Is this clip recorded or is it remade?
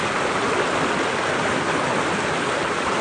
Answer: recorded